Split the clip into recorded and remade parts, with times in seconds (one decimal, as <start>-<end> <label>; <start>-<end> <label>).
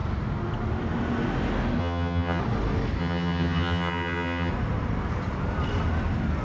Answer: 0.0-1.8 recorded; 1.8-2.4 remade; 2.4-3.0 recorded; 3.0-4.5 remade; 4.5-6.4 recorded